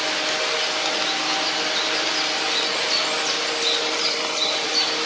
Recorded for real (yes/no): yes